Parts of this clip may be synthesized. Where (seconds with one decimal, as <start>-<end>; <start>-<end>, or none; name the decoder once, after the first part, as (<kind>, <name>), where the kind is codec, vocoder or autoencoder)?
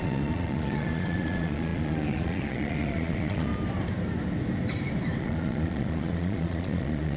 0.0-3.5 (vocoder, Vocos); 5.2-7.2